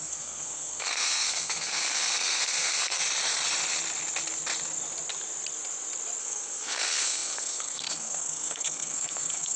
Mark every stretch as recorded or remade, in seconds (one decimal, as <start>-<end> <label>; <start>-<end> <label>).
0.0-3.0 remade; 3.0-6.2 recorded; 6.2-9.6 remade